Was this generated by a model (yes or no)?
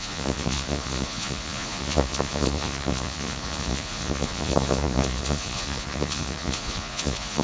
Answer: yes